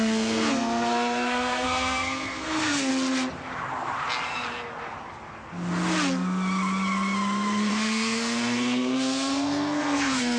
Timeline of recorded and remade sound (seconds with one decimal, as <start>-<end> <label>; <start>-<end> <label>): 0.0-2.9 remade; 2.9-7.7 recorded; 7.7-10.4 remade